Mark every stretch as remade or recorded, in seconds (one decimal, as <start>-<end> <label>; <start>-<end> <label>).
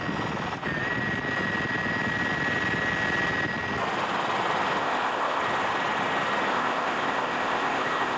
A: 0.0-4.8 recorded; 4.8-5.4 remade; 5.4-6.5 recorded; 6.5-8.2 remade